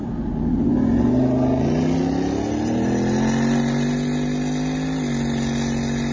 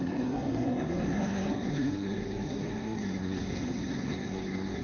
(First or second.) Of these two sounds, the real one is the first